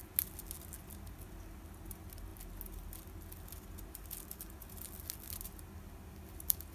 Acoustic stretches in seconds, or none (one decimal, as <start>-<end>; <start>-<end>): 0.0-6.7